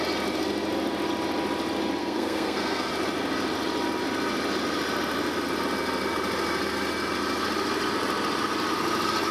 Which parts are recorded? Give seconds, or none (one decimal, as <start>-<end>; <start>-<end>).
0.0-2.0; 2.9-9.3

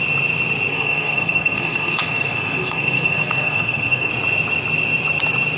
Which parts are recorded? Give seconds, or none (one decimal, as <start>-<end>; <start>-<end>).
0.0-0.7; 4.1-5.6

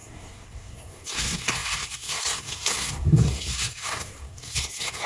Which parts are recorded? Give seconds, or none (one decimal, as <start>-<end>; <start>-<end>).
none

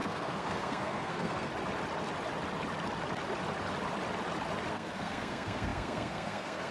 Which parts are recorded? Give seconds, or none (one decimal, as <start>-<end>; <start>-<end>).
1.5-4.7